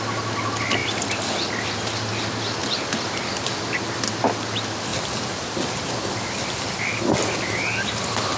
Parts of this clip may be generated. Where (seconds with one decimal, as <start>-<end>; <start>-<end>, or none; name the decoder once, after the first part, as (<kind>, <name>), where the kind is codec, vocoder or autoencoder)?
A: 2.6-4.0 (vocoder, BigVGAN v2); 4.9-6.1